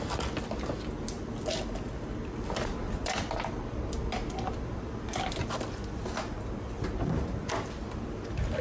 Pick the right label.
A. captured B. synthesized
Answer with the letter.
A